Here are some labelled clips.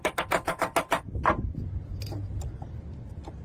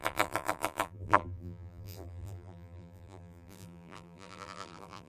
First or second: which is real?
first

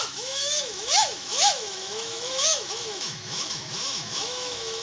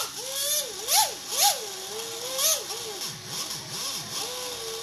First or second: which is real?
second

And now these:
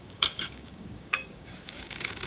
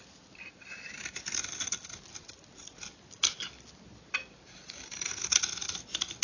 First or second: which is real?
second